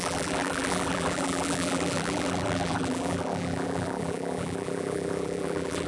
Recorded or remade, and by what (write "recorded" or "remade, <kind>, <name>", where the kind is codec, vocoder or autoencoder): remade, vocoder, BigVGAN v2